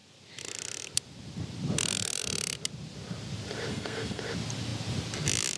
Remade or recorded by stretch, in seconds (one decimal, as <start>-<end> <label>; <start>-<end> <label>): 0.0-3.7 recorded; 3.7-4.2 remade; 4.2-5.6 recorded